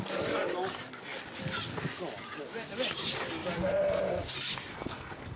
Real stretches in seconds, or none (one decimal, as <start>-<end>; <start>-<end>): 0.0-4.7